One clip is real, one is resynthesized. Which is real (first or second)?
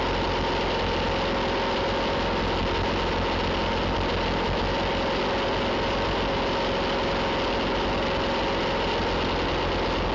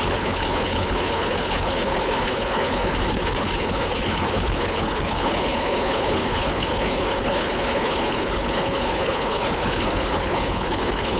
first